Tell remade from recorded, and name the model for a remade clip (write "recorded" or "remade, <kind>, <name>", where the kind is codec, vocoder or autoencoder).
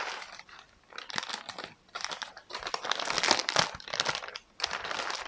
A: recorded